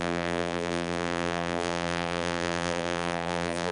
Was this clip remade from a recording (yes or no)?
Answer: yes